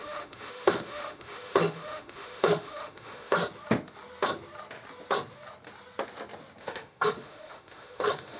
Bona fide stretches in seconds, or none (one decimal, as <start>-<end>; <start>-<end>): 3.4-6.6